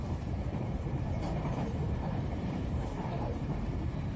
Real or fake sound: fake